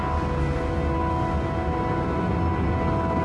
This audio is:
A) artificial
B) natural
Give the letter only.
B